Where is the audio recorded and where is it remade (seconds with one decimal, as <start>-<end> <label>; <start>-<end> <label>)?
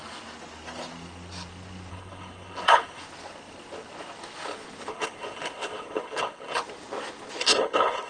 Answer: 0.0-1.9 recorded; 1.9-3.0 remade; 3.0-4.9 recorded; 4.9-6.6 remade; 6.6-7.4 recorded; 7.4-8.1 remade